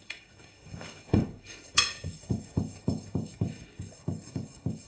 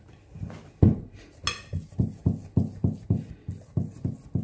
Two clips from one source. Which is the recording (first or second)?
second